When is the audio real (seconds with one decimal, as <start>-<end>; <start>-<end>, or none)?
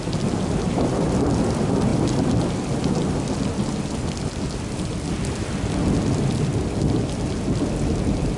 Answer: 0.0-8.4